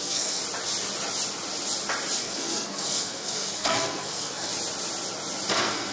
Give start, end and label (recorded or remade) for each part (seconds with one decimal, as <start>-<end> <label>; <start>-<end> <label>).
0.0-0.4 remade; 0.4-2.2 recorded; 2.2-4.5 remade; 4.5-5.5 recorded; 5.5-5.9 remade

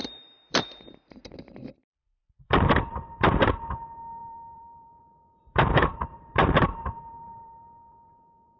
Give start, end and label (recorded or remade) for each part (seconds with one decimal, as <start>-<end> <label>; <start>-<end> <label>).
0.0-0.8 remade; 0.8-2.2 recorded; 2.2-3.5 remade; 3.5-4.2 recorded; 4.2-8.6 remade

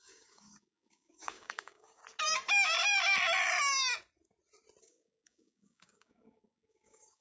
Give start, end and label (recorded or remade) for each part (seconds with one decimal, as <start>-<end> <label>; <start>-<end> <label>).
0.0-2.0 remade; 2.0-4.8 recorded; 4.8-7.2 remade

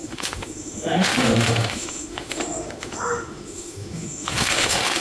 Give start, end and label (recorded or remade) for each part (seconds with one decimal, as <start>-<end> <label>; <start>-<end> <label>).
0.0-5.0 remade

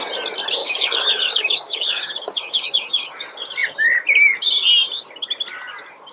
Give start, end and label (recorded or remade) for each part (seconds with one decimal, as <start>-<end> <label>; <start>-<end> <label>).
0.0-0.6 recorded; 0.6-3.1 remade; 3.1-6.1 recorded

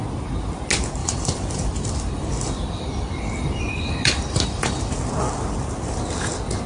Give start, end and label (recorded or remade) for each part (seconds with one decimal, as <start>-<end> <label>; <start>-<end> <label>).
0.0-1.0 recorded; 1.0-4.8 remade; 4.8-6.7 recorded

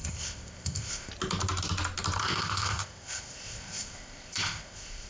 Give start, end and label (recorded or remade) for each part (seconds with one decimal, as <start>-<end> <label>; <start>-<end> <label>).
0.0-1.1 remade; 1.1-2.2 recorded; 2.2-5.1 remade